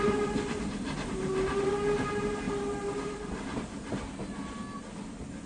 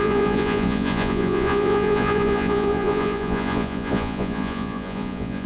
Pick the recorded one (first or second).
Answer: first